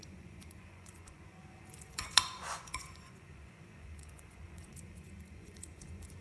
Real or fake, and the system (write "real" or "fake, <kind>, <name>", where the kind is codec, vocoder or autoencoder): fake, vocoder, Vocos